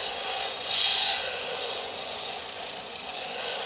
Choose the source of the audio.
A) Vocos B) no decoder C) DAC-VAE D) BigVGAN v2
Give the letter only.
A